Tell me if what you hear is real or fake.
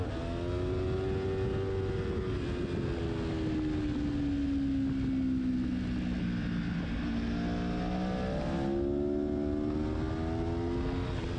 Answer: real